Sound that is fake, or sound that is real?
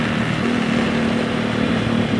real